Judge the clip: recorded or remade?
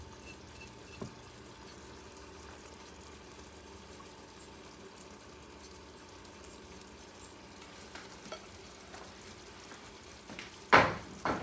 recorded